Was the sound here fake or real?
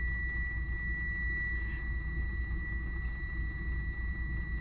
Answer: real